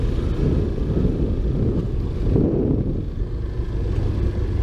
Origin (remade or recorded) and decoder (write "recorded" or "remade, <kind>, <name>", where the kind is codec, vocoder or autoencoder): recorded